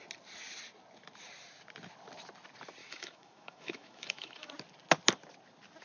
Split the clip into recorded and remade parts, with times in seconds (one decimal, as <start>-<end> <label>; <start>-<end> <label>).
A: 0.0-2.8 recorded; 2.8-4.5 remade; 4.5-5.8 recorded